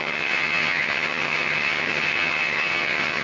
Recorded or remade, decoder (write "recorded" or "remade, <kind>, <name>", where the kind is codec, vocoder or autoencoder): remade, vocoder, HiFi-GAN